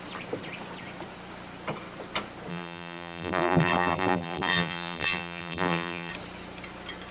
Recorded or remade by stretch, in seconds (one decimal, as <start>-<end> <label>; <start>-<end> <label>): 0.0-2.5 recorded; 2.5-6.1 remade; 6.1-7.1 recorded

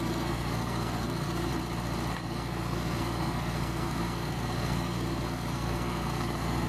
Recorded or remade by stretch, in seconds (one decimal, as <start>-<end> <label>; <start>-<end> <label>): 0.0-1.5 remade; 1.5-2.1 recorded; 2.1-6.7 remade

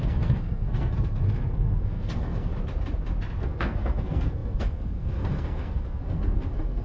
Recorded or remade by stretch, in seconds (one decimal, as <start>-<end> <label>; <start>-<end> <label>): 0.0-2.5 remade; 2.5-3.4 recorded; 3.4-6.8 remade

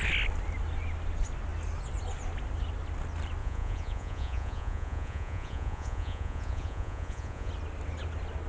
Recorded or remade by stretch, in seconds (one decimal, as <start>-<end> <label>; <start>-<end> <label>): 0.0-3.4 recorded; 3.4-7.5 remade; 7.5-8.5 recorded